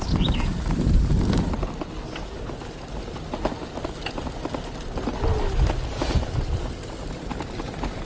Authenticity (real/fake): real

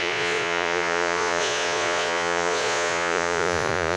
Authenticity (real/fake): fake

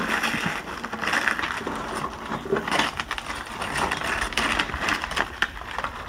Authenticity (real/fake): real